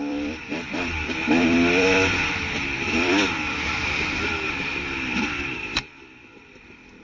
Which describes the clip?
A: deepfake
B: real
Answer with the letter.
A